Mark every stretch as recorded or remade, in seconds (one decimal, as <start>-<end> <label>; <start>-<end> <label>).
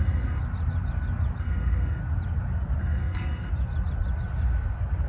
0.0-0.4 remade; 0.4-1.4 recorded; 1.4-2.0 remade; 2.0-2.8 recorded; 2.8-3.5 remade; 3.5-5.1 recorded